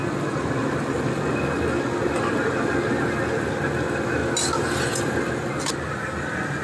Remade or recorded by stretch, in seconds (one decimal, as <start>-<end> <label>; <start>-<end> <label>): 0.0-6.6 recorded

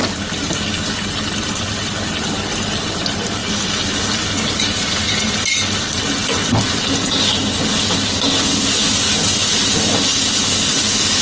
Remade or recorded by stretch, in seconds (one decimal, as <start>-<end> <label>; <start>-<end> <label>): 0.0-11.2 recorded